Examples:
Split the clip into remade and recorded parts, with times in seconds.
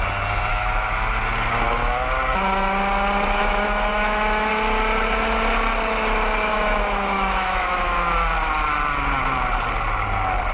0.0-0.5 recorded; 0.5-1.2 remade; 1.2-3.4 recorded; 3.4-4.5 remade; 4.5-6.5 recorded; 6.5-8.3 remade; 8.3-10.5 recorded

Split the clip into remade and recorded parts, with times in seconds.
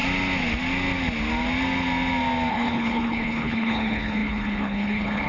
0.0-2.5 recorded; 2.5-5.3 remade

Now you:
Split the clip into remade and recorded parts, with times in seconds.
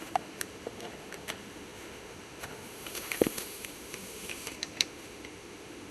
0.0-5.9 remade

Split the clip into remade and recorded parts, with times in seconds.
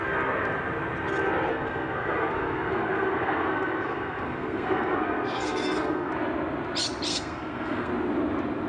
0.0-1.5 recorded; 1.5-6.1 remade; 6.1-7.1 recorded; 7.1-7.9 remade; 7.9-8.7 recorded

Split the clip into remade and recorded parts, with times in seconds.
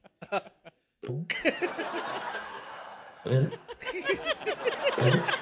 0.0-2.3 recorded; 2.3-3.5 remade; 3.5-5.4 recorded